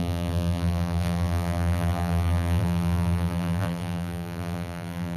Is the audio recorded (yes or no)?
no